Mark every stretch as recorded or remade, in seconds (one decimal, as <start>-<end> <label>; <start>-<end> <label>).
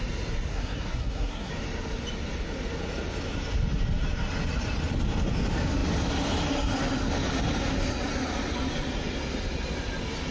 0.0-0.5 recorded; 0.5-1.5 remade; 1.5-10.3 recorded